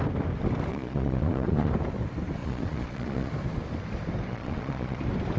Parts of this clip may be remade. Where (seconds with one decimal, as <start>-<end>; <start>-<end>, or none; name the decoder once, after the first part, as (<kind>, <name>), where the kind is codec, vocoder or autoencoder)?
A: 0.7-1.7 (vocoder, Vocos); 2.4-3.3; 4.3-5.0